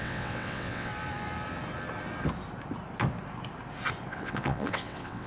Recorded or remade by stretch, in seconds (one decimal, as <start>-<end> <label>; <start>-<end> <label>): 0.0-0.9 remade; 0.9-4.1 recorded; 4.1-5.3 remade